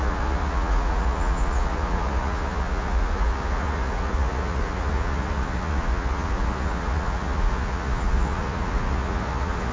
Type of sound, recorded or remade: remade